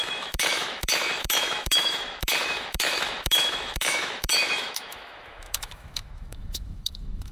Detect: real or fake fake